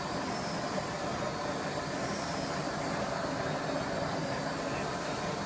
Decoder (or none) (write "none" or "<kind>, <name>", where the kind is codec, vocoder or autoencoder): none